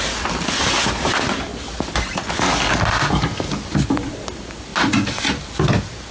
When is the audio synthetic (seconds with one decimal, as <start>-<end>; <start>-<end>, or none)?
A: none

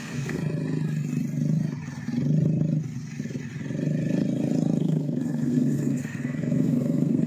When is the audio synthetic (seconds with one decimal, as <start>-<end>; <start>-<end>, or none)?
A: 0.0-0.4; 4.8-7.3

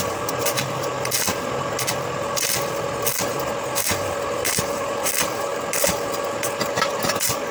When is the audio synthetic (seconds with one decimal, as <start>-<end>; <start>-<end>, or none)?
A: 5.5-6.9

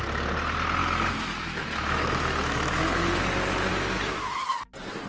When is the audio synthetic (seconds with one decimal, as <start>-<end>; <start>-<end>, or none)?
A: 0.8-3.2; 3.7-4.4

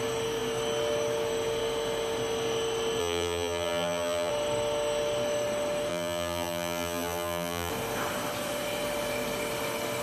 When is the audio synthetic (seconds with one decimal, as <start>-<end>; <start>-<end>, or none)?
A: 3.0-4.3; 5.9-7.7